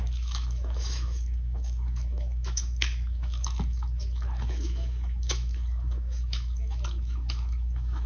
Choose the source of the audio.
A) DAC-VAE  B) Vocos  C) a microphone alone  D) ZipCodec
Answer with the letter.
A